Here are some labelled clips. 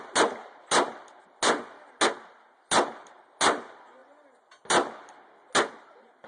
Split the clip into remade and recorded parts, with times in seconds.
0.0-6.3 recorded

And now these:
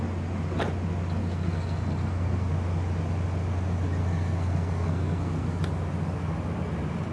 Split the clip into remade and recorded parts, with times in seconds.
0.0-1.2 recorded; 1.2-2.5 remade; 2.5-4.0 recorded; 4.0-5.6 remade; 5.6-7.1 recorded

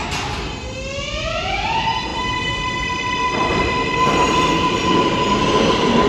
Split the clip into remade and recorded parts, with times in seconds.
0.0-2.1 recorded; 2.1-5.3 remade; 5.3-6.1 recorded